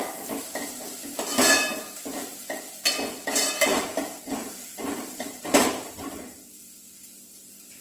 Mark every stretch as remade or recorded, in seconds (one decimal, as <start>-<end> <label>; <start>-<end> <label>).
0.0-3.7 recorded; 3.7-6.0 remade; 6.0-7.8 recorded